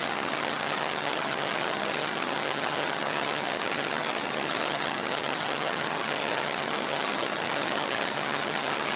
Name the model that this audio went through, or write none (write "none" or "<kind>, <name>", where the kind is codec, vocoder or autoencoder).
vocoder, HiFi-GAN